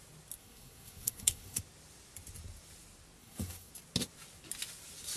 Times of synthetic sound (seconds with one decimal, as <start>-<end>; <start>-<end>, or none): 0.4-1.6; 3.2-3.7